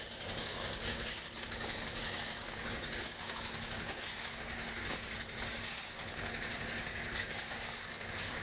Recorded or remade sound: remade